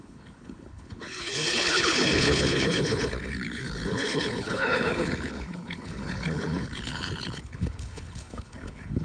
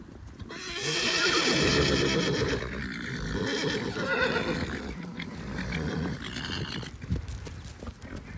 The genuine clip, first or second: second